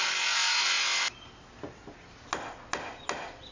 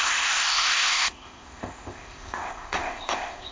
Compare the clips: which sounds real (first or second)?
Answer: first